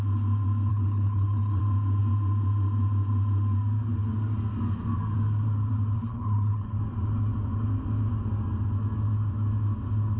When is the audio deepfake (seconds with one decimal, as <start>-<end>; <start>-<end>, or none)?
0.7-1.6; 6.0-6.8